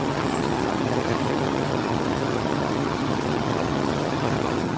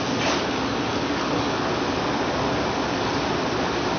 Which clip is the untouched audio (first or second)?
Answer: second